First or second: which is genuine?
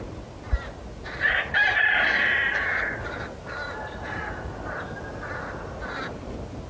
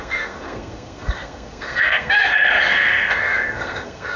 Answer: first